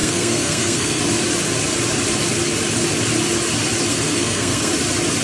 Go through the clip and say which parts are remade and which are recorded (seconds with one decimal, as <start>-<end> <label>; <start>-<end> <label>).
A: 0.0-1.0 remade; 1.0-3.9 recorded; 3.9-4.7 remade; 4.7-5.2 recorded